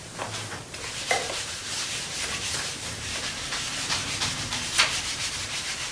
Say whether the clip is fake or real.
fake